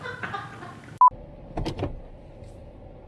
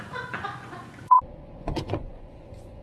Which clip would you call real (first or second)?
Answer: first